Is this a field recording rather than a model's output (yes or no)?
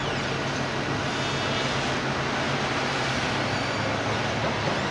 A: yes